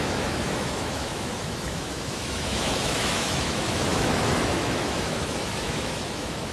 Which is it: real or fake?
fake